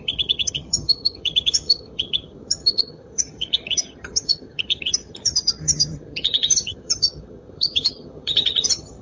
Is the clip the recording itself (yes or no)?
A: no